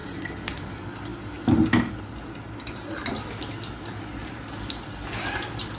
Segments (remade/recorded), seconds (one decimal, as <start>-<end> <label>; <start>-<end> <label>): 0.0-5.8 recorded